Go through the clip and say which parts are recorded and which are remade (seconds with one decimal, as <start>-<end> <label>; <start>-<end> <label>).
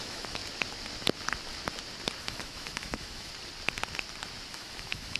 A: 0.0-0.4 remade; 0.4-2.2 recorded; 2.2-3.3 remade; 3.3-4.5 recorded; 4.5-5.2 remade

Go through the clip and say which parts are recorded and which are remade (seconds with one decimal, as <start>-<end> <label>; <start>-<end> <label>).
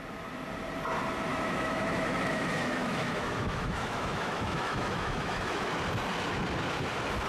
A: 0.0-1.3 recorded; 1.3-5.7 remade; 5.7-7.3 recorded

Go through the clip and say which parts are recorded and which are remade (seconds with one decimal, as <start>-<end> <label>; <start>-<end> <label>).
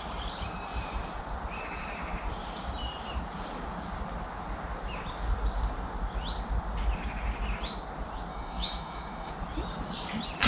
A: 0.0-8.3 recorded; 8.3-9.3 remade; 9.3-10.5 recorded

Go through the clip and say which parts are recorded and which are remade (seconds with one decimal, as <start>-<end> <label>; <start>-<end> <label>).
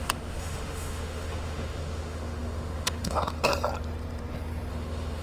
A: 0.0-3.5 remade; 3.5-4.7 recorded; 4.7-5.2 remade